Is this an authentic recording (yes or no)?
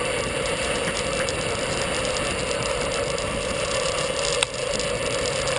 yes